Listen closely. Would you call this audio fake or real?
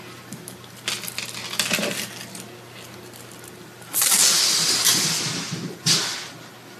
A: real